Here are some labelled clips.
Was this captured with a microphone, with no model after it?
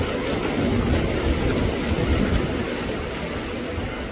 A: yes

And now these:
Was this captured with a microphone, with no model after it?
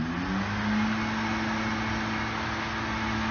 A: yes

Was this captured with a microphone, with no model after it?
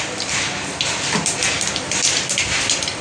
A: yes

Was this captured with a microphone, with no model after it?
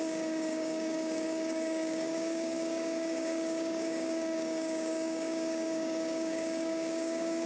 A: no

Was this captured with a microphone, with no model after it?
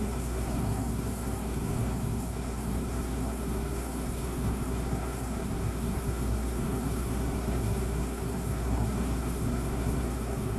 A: no